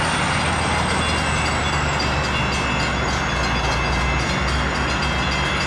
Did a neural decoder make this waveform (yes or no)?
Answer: no